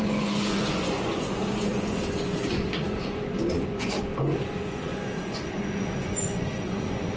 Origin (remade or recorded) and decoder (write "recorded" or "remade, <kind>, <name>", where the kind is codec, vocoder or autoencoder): remade, vocoder, Vocos